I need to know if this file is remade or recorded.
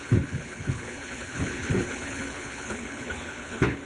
remade